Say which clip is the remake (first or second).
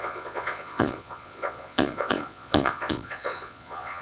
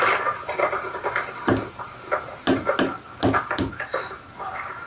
first